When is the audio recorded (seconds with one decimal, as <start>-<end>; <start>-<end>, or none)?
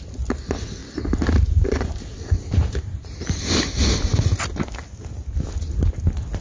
0.0-0.8; 3.4-6.4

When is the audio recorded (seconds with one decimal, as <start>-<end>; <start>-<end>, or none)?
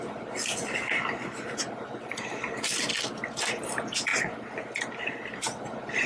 2.9-3.6; 4.1-5.6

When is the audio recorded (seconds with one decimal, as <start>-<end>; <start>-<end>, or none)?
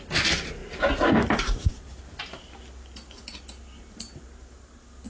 0.0-0.6; 2.0-5.1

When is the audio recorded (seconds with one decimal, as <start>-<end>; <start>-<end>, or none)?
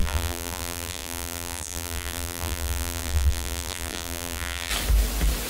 4.7-5.5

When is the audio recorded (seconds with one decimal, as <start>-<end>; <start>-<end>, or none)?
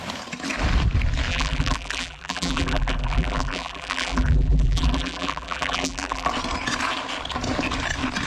0.0-1.3; 6.3-8.3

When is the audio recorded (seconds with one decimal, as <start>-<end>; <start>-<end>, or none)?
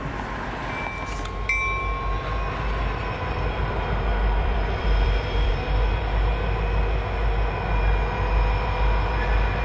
0.0-3.0; 5.5-9.6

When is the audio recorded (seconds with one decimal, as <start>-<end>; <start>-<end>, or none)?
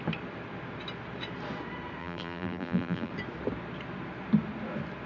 0.0-2.0; 3.1-5.1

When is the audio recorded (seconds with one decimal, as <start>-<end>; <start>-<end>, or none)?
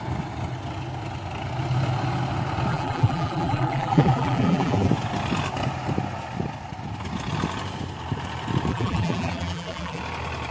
0.0-2.7; 4.9-8.7; 10.0-10.5